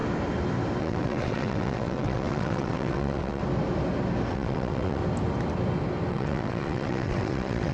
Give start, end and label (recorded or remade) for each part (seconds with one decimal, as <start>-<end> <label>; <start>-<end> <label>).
0.0-0.8 recorded; 0.8-3.4 remade; 3.4-4.3 recorded; 4.3-5.0 remade; 5.0-6.1 recorded; 6.1-7.7 remade